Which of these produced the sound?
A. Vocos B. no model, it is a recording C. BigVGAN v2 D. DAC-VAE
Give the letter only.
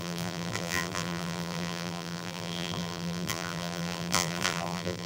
C